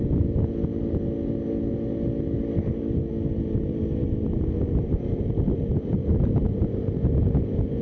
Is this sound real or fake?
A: real